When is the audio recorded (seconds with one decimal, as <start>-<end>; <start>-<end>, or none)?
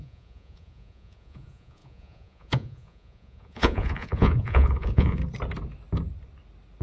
5.2-6.8